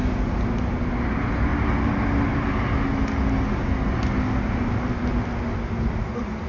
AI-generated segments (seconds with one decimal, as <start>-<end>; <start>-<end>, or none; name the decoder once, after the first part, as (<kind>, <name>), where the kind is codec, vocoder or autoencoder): none